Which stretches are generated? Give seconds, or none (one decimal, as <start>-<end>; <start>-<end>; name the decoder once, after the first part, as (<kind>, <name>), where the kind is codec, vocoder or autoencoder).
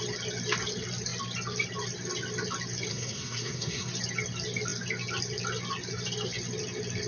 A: 2.9-3.9 (codec, SNAC)